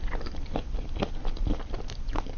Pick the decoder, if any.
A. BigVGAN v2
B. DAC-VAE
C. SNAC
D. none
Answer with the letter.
D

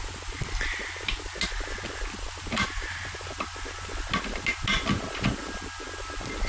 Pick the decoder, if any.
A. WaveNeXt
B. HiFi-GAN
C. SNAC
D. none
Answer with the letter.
D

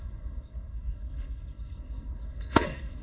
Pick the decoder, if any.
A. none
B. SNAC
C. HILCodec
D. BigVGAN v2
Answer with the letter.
B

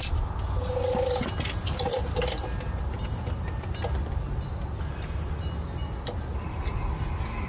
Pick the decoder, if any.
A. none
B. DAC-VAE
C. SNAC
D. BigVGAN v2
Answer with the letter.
A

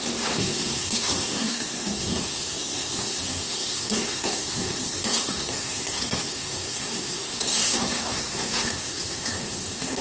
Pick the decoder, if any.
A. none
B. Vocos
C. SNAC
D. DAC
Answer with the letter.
C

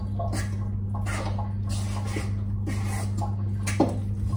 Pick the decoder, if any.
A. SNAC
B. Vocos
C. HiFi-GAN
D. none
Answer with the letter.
D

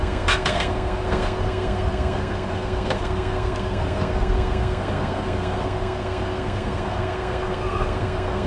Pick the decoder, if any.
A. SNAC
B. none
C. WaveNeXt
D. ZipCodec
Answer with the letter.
A